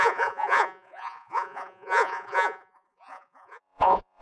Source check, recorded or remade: remade